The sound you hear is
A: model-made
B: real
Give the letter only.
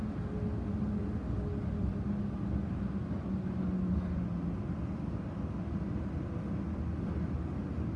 B